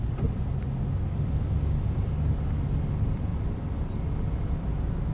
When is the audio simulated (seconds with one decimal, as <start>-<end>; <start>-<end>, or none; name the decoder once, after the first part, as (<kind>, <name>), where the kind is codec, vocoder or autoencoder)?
none